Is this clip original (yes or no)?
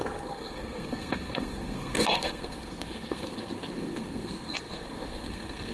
no